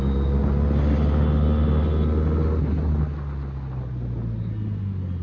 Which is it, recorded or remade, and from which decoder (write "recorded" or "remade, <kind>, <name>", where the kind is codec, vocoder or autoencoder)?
recorded